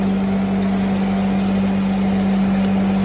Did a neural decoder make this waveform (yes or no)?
no